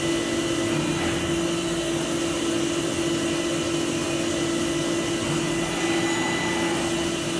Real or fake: real